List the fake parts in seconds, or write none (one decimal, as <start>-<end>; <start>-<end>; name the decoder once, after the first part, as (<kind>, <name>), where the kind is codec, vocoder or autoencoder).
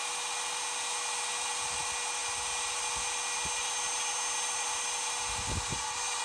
none